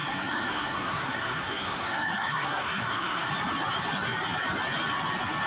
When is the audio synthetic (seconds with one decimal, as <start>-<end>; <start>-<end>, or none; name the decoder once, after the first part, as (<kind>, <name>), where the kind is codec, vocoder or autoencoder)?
0.0-3.3 (codec, SNAC)